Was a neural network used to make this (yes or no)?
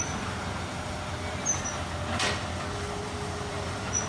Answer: no